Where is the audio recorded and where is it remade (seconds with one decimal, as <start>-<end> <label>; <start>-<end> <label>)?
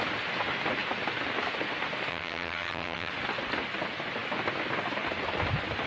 0.0-2.1 recorded; 2.1-3.1 remade; 3.1-5.9 recorded